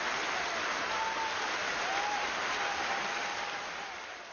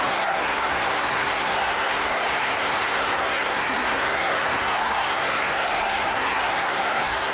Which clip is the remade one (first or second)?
second